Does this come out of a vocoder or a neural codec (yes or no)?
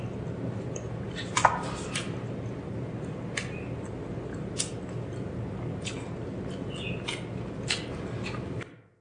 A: no